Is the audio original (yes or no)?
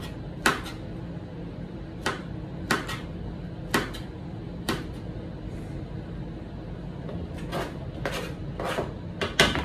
no